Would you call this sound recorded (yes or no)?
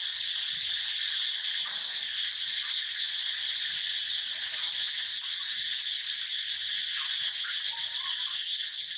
yes